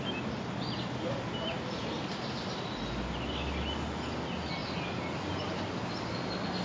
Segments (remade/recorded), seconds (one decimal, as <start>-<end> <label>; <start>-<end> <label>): 0.0-6.6 recorded